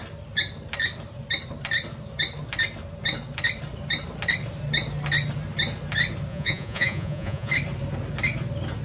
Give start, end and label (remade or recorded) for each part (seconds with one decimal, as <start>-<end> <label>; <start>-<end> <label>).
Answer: 0.0-6.3 recorded; 6.3-7.5 remade; 7.5-8.8 recorded